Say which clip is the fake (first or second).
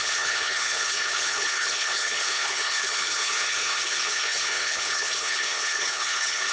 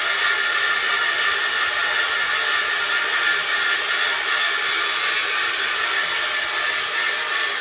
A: first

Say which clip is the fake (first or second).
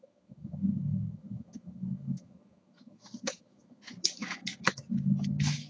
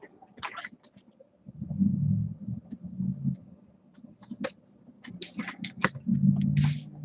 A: first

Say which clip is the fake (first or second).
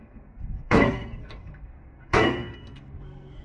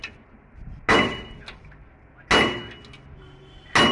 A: first